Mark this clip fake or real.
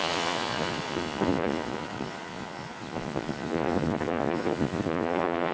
fake